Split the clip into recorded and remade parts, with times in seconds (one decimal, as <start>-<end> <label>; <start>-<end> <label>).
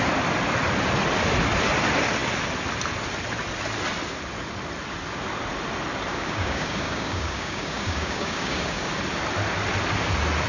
0.0-6.1 recorded; 6.1-8.9 remade; 8.9-10.5 recorded